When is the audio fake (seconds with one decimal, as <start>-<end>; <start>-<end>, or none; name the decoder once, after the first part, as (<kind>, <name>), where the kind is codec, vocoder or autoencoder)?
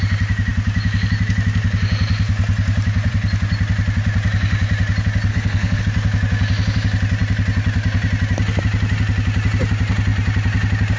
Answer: 5.3-5.8 (codec, SNAC)